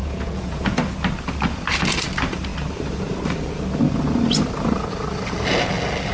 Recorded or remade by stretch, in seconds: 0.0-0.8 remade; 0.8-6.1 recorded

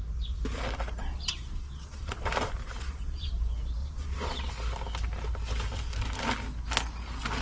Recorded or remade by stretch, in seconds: 0.0-1.0 recorded; 1.0-2.3 remade; 2.3-2.8 recorded; 2.8-3.3 remade; 3.3-3.8 recorded; 3.8-4.5 remade; 4.5-7.4 recorded

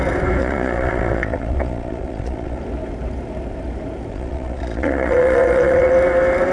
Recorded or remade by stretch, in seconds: 0.0-0.4 recorded; 0.4-2.6 remade; 2.6-4.1 recorded; 4.1-5.9 remade; 5.9-6.5 recorded

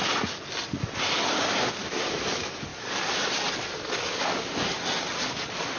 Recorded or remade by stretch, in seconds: 0.0-5.8 recorded

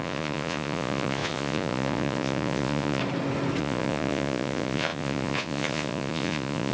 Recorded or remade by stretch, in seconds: 0.0-3.0 remade; 3.0-3.6 recorded; 3.6-6.7 remade

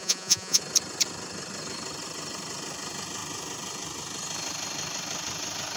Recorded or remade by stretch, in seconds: 0.0-0.6 remade; 0.6-5.8 recorded

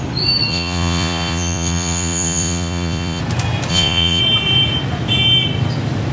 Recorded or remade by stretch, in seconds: 0.0-0.5 recorded; 0.5-3.2 remade; 3.2-3.7 recorded; 3.7-4.2 remade; 4.2-6.1 recorded